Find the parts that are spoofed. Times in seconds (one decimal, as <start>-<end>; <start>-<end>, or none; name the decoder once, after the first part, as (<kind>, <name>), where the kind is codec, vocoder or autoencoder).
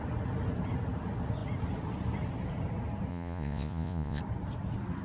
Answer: 3.1-4.2 (vocoder, Vocos)